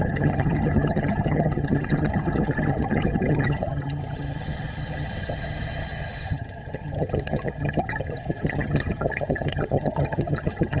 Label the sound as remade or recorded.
remade